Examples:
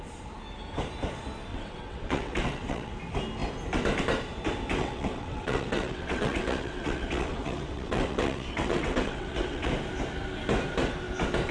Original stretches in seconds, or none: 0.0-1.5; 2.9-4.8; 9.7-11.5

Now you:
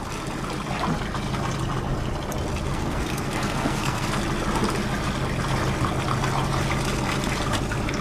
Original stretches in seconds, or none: 0.0-2.7; 4.1-8.0

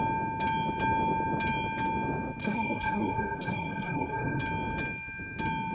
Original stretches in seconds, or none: 0.0-2.4; 4.4-5.7

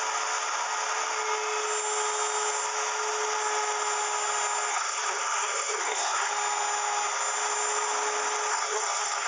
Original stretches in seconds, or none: 0.0-4.7; 6.3-8.5

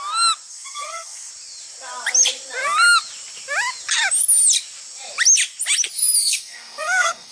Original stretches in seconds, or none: 0.0-0.5; 1.3-6.2

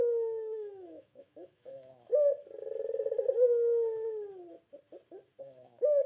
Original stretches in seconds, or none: 2.1-5.4